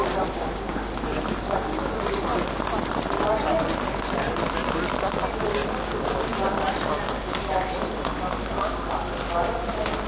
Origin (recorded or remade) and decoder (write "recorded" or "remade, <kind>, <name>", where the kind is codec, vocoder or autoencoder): recorded